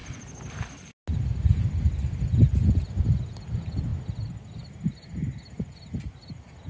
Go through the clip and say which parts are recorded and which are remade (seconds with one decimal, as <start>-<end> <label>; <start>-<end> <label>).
0.0-6.7 recorded